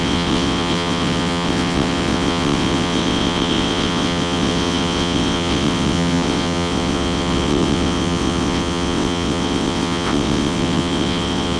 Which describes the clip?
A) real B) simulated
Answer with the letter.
B